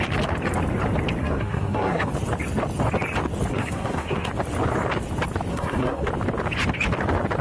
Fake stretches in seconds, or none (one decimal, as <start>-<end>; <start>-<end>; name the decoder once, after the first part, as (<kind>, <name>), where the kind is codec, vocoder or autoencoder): 1.2-2.1 (codec, SNAC); 3.5-4.3; 5.5-6.1